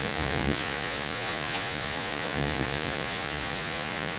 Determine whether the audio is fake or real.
fake